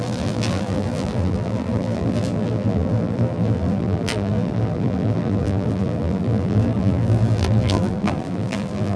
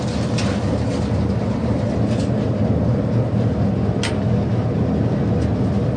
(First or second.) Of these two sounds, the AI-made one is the first